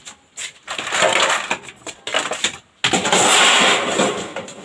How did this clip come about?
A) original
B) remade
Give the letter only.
A